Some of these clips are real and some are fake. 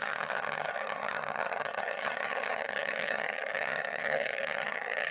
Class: fake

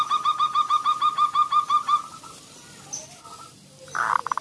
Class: real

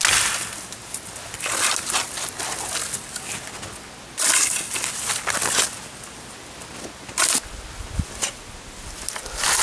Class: real